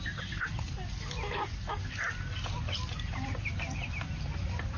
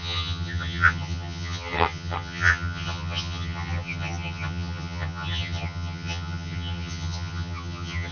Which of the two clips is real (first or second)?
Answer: first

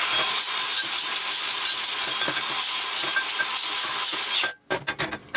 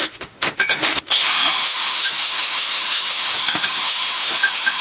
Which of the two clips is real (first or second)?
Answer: first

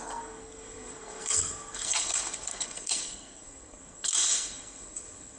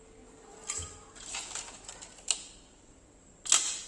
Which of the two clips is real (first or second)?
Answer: second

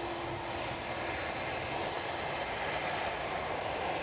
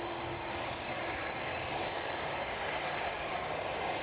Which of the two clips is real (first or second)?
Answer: first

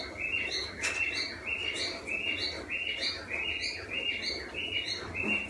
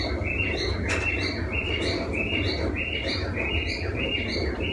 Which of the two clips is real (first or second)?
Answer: first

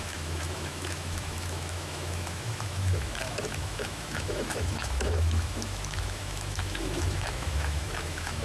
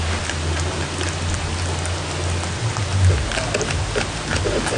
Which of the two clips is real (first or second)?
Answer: second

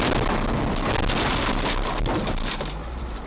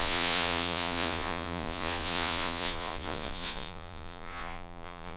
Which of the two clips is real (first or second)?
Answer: first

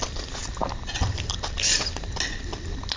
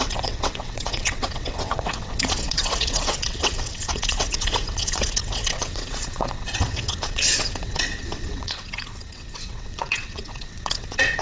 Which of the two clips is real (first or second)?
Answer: first